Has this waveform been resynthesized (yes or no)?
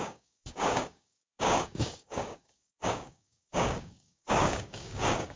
yes